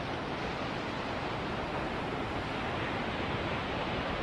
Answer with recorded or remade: recorded